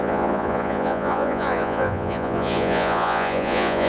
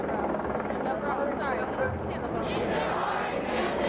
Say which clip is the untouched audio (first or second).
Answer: second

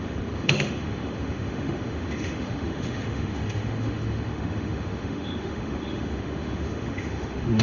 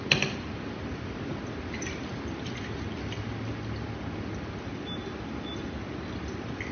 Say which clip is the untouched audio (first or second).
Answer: second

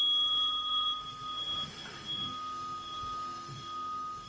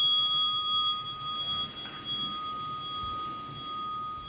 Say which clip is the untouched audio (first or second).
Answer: second